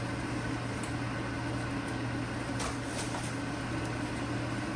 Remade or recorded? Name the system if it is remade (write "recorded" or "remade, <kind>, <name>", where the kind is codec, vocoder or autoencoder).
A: recorded